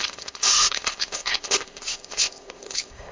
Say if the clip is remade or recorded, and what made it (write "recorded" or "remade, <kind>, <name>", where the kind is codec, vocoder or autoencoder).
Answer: remade, codec, ZipCodec